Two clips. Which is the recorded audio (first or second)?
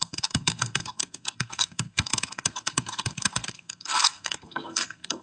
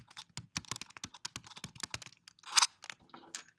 second